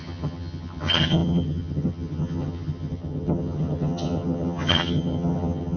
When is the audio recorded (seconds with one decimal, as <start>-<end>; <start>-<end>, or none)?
none

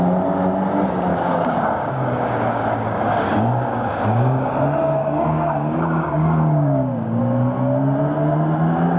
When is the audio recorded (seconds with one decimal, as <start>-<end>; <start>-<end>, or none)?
0.0-1.1; 4.5-5.0; 7.2-9.0

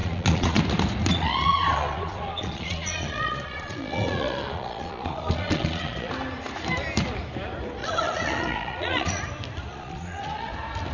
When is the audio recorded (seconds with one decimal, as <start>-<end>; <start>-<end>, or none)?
0.6-1.1; 6.1-7.8; 9.2-9.7; 10.5-10.9

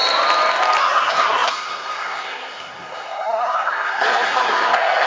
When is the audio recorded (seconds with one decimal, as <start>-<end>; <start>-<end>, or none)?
0.0-0.8

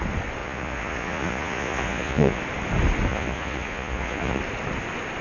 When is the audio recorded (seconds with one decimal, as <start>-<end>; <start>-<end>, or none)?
0.0-0.4; 2.4-3.1; 4.4-5.2